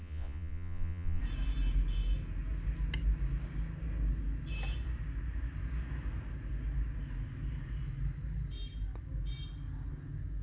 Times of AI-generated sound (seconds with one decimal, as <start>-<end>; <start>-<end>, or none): 0.0-1.2